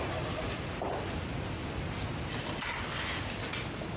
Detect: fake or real real